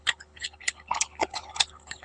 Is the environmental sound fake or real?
fake